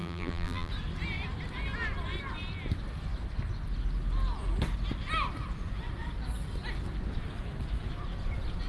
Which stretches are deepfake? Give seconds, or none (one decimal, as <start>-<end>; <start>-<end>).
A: 0.0-0.7